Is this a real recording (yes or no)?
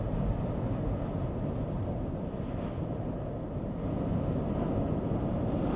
yes